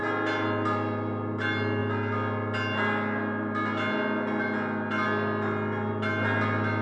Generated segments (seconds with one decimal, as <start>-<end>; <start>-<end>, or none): none